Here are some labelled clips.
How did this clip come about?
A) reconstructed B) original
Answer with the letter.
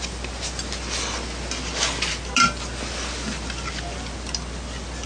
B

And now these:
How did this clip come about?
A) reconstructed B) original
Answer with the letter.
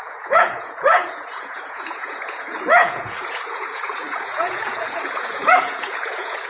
A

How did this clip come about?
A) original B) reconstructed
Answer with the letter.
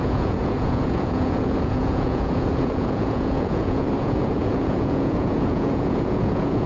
B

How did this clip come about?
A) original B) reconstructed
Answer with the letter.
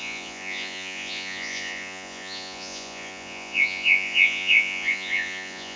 B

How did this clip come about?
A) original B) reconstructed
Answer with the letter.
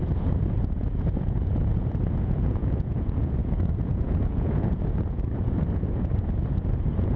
B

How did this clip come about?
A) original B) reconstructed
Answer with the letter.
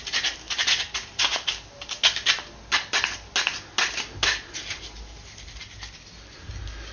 A